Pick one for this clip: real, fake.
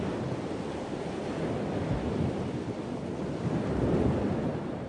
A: real